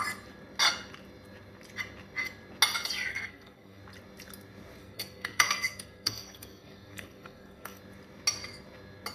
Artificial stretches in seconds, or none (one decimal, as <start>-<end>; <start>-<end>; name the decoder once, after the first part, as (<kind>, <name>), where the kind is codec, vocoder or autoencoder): 3.1-3.8 (codec, SNAC); 4.8-7.8